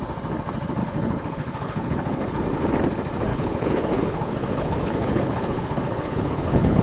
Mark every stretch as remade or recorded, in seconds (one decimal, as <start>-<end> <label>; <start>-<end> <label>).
0.0-0.8 recorded; 0.8-2.4 remade; 2.4-3.3 recorded; 3.3-6.8 remade